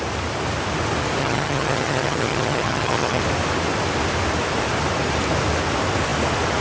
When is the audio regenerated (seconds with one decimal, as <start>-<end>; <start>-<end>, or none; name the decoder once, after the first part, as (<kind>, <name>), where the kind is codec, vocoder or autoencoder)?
1.2-3.2 (vocoder, HiFi-GAN)